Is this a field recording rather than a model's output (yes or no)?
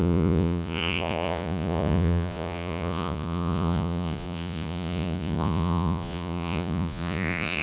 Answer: no